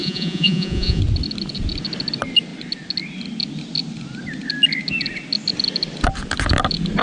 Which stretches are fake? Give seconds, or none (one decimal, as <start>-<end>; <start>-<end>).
0.0-1.0